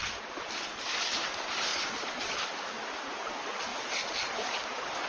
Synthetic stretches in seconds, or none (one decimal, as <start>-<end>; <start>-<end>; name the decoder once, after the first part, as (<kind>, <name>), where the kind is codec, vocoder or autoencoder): 1.7-2.3 (vocoder, Vocos)